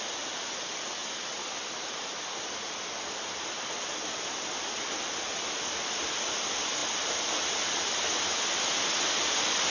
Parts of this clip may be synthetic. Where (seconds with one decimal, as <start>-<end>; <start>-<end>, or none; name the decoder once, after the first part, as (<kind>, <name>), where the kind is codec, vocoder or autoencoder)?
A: none